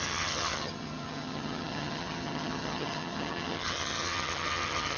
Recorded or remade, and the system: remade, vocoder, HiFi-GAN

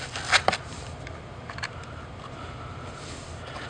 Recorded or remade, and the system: recorded